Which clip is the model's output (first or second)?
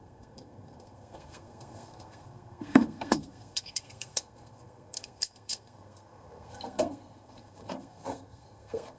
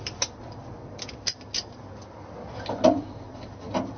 first